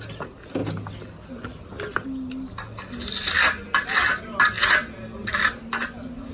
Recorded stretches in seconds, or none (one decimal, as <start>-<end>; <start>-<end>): 0.0-6.3